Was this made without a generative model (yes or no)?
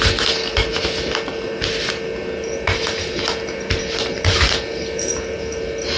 yes